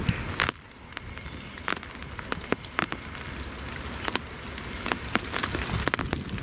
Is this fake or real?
real